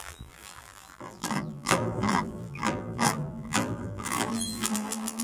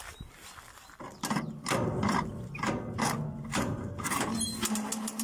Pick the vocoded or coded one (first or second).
first